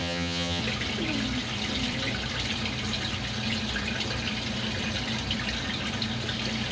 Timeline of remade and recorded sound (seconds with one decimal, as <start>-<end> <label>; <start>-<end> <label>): 0.0-0.6 remade; 0.6-6.7 recorded